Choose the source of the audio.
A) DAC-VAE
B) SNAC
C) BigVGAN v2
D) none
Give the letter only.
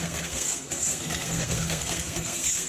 B